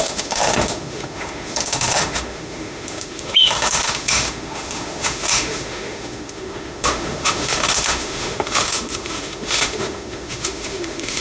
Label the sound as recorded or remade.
remade